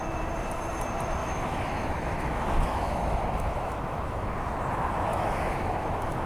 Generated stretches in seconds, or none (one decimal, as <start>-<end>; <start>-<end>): 1.2-4.3; 5.1-6.3